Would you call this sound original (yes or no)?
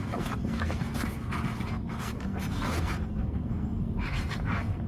no